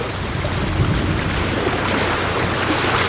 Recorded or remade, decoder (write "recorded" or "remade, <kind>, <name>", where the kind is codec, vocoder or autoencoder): recorded